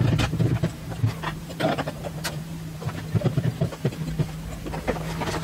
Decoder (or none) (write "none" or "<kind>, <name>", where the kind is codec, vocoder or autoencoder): vocoder, BigVGAN v2